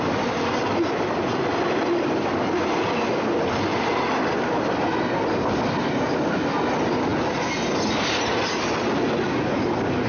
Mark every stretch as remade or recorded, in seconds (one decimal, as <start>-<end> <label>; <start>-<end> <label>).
0.0-10.1 recorded